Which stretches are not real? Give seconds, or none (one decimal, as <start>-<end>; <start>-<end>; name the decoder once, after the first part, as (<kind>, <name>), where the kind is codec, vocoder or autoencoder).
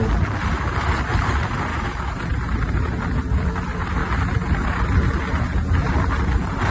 1.7-2.2 (autoencoder, DAC-VAE)